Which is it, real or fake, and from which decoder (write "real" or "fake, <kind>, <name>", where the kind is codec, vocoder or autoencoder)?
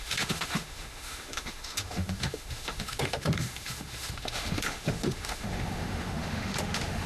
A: fake, autoencoder, DAC-VAE